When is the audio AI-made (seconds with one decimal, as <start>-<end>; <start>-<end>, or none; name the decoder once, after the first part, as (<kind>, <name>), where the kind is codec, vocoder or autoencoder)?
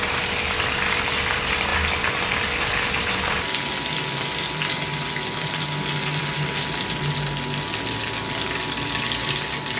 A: none